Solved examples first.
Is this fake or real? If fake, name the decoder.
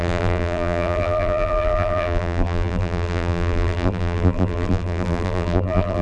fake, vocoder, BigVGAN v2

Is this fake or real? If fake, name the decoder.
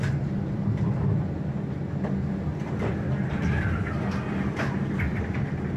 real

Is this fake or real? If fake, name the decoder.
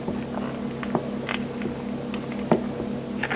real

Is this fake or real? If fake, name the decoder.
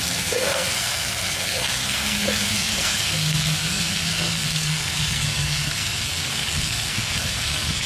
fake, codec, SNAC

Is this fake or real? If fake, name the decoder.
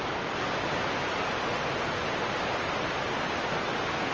real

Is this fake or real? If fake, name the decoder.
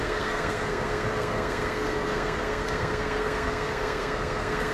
fake, codec, SNAC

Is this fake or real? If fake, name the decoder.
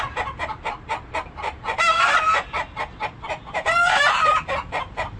fake, vocoder, BigVGAN v2